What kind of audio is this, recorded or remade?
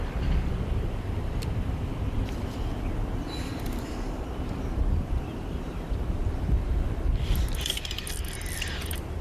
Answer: remade